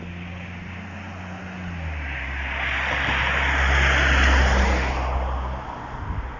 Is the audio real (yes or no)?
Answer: yes